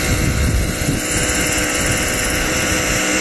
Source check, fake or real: real